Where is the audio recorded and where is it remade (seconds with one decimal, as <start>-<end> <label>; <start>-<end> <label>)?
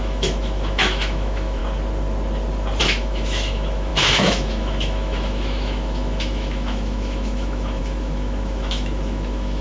0.0-1.6 remade; 1.6-2.8 recorded; 2.8-9.6 remade